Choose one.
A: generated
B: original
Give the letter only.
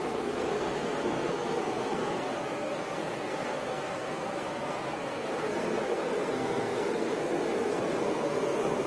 A